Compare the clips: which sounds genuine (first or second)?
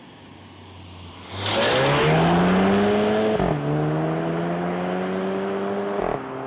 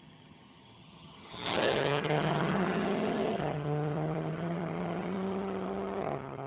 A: first